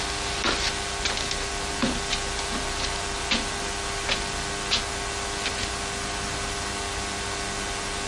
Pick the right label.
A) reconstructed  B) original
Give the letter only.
B